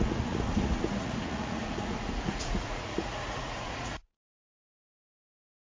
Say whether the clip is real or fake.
fake